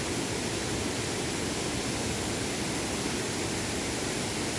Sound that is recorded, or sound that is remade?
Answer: recorded